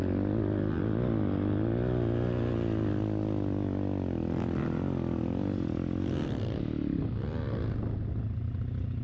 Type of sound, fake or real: real